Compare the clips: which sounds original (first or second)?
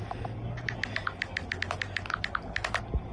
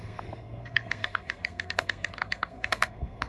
first